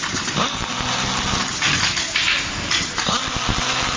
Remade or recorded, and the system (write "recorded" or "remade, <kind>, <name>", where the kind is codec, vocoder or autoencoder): recorded